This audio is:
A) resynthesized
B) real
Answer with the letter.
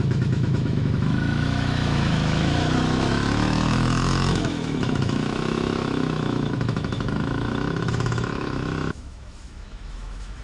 A